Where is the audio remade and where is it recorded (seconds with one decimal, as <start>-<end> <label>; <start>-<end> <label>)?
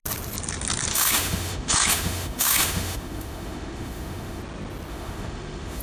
0.0-0.9 recorded; 0.9-4.4 remade; 4.4-4.9 recorded; 4.9-5.8 remade